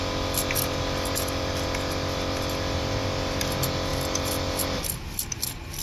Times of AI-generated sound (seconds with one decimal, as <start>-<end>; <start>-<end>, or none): none